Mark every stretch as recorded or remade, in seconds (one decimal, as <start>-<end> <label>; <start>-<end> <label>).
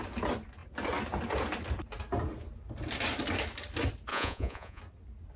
0.0-4.1 recorded; 4.1-4.8 remade; 4.8-5.4 recorded